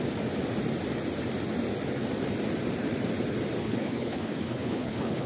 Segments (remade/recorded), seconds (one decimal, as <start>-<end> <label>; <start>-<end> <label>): 0.0-3.6 recorded; 3.6-5.3 remade